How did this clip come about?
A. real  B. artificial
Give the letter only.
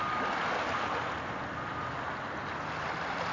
A